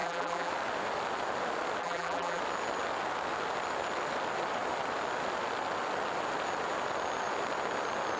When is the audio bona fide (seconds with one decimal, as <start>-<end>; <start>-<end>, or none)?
0.5-1.8; 2.4-8.2